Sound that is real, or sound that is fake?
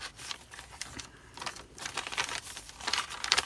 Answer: fake